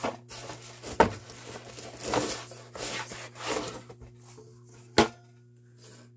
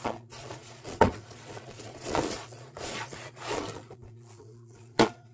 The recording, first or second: first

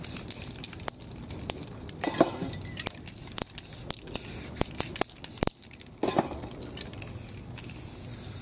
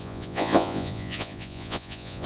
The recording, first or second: first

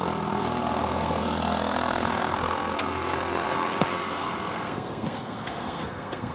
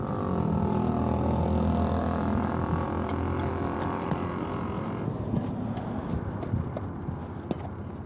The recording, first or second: second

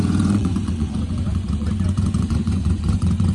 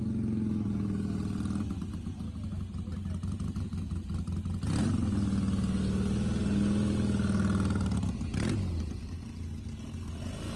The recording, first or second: second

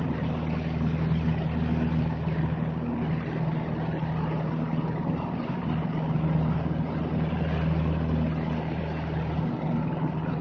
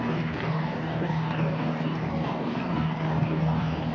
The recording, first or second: first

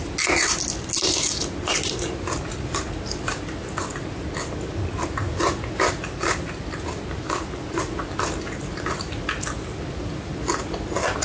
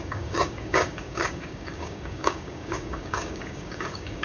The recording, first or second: first